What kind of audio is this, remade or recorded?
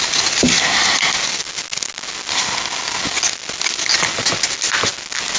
recorded